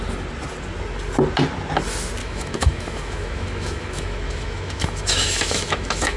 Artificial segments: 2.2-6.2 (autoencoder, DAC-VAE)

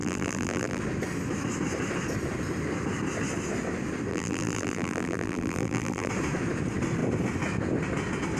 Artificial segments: 0.0-0.8 (vocoder, BigVGAN v2); 4.1-6.1

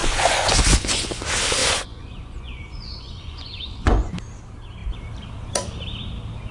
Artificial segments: 0.0-1.1 (vocoder, Vocos); 1.6-4.1

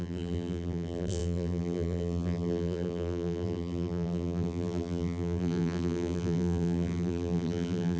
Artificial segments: 0.0-8.0 (vocoder, BigVGAN v2)